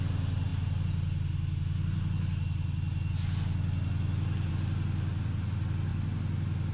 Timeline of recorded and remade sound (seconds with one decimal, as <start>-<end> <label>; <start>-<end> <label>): 0.0-6.7 recorded